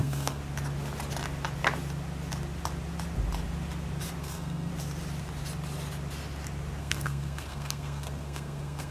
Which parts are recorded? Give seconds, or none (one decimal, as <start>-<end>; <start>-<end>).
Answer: 0.4-4.2; 4.7-6.8